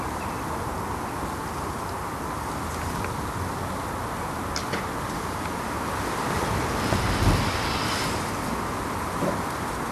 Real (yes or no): yes